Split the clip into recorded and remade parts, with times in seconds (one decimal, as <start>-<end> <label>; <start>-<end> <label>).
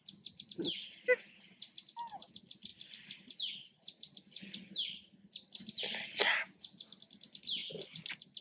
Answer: 0.0-8.4 recorded